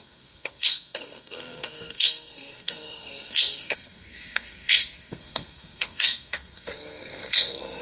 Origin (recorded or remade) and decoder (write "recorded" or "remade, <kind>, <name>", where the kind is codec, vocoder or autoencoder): remade, codec, SNAC